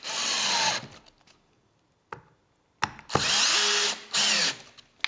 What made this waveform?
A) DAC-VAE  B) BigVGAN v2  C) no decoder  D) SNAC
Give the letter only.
C